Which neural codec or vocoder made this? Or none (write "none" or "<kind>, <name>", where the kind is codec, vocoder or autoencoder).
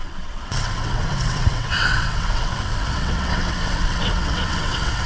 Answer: vocoder, WaveNeXt